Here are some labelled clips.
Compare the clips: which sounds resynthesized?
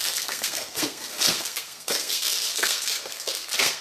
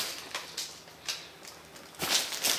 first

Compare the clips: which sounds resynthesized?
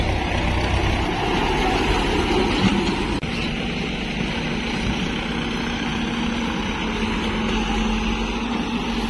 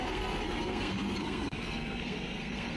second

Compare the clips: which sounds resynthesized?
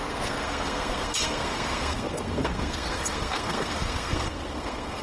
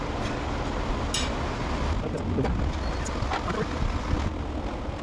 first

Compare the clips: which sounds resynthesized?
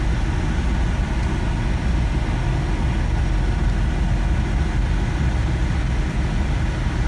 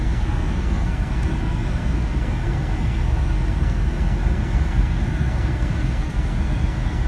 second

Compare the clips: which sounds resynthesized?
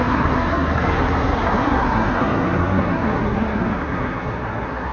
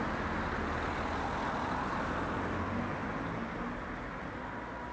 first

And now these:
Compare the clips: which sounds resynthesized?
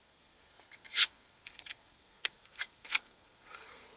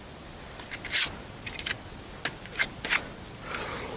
first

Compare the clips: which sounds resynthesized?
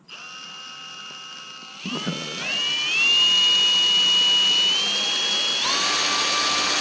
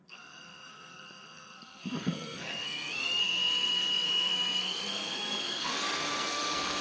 second